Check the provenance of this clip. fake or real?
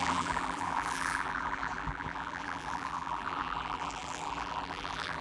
fake